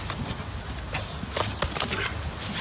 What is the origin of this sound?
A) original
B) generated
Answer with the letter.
A